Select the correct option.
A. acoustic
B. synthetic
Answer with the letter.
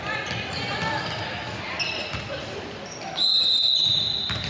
A